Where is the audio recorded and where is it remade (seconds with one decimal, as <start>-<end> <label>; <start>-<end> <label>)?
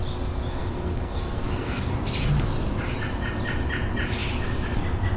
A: 0.0-0.5 recorded; 0.5-1.9 remade; 1.9-5.2 recorded